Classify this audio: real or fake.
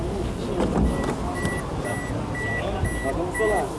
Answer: real